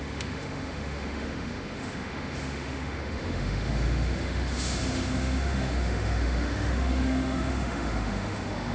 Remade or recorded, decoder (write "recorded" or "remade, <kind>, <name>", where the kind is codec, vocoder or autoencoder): remade, autoencoder, DAC-VAE